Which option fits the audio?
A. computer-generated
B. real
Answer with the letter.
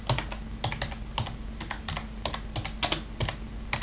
B